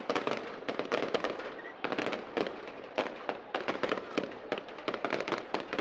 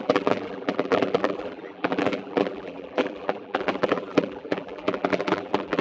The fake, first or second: second